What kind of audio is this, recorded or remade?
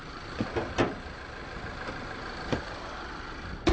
recorded